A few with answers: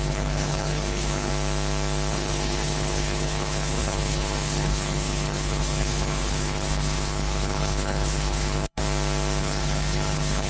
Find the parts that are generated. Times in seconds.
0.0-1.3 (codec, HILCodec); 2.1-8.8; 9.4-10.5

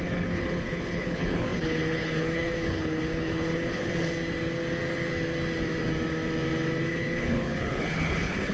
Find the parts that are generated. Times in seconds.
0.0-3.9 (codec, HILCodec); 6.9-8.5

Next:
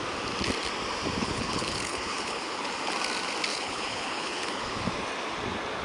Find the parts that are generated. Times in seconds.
1.2-2.7 (codec, HILCodec); 3.5-4.6

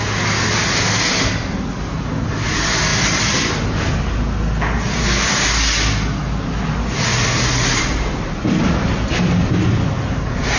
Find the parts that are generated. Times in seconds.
none

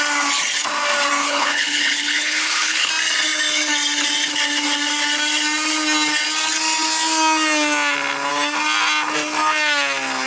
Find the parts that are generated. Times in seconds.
1.2-2.9 (codec, HILCodec)

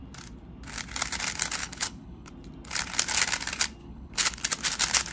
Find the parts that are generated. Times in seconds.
1.6-2.3 (codec, HILCodec); 3.8-4.4